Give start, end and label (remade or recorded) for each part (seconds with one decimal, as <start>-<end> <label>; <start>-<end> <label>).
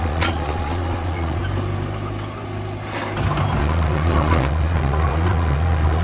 0.0-1.4 remade; 1.4-3.6 recorded; 3.6-6.0 remade